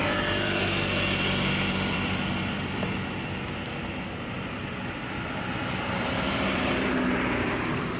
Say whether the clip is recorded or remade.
remade